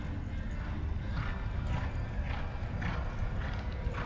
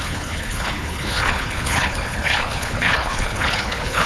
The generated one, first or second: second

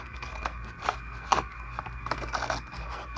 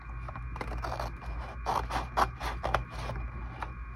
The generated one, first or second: first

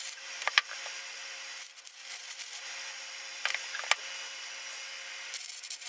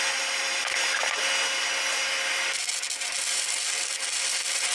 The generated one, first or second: first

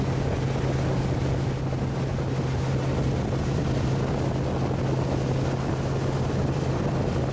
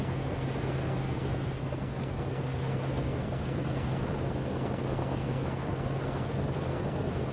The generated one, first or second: second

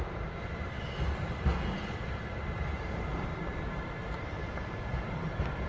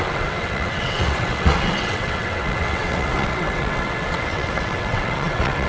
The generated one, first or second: second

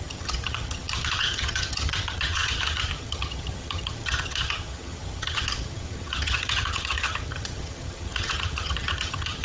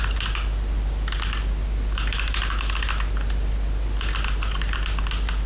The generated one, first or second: first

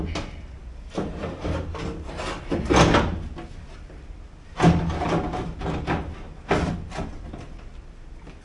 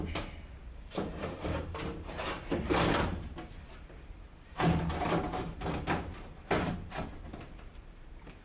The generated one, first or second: second